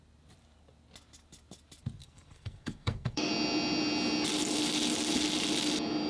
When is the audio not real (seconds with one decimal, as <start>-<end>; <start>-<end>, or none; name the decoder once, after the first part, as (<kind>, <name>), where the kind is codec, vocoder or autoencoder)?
2.0-3.3 (codec, SNAC)